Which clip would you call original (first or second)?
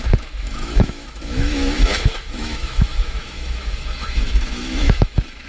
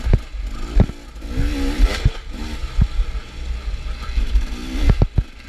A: second